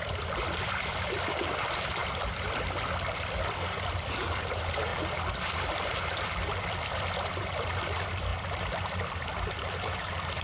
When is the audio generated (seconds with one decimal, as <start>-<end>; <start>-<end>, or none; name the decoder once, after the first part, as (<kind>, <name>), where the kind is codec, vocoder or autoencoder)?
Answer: 0.0-4.9 (vocoder, BigVGAN v2); 6.3-10.4